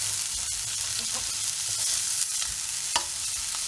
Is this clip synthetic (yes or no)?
no